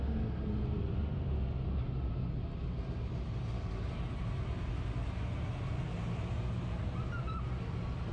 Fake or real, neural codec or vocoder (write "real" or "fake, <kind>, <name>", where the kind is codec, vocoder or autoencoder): real